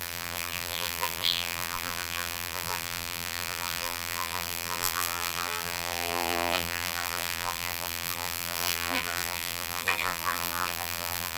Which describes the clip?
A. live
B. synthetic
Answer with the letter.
B